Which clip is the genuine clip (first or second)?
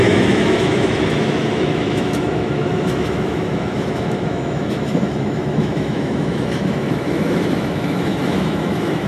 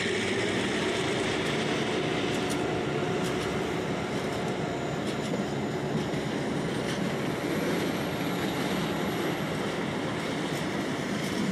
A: second